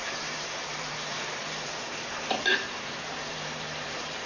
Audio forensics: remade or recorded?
remade